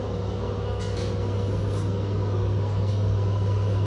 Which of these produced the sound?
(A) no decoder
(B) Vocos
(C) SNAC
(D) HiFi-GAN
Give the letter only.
C